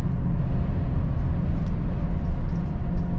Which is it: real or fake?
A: real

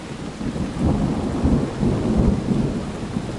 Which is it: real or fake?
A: real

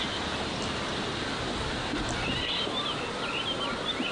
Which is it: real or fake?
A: real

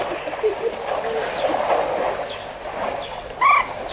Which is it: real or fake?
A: real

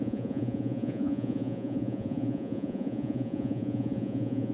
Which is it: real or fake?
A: fake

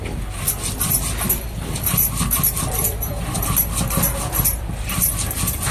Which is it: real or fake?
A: real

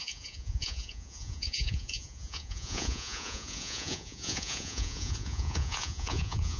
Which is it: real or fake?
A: fake